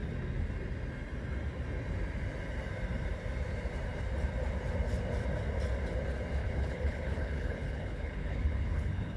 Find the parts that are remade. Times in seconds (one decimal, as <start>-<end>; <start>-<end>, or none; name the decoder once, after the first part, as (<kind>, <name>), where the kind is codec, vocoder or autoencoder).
6.4-9.2 (codec, HILCodec)